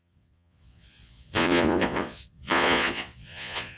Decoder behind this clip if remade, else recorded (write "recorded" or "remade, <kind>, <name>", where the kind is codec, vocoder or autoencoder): remade, vocoder, Vocos